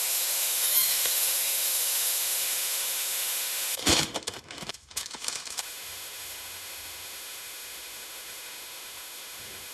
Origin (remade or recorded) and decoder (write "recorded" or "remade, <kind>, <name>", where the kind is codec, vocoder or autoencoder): remade, autoencoder, DAC-VAE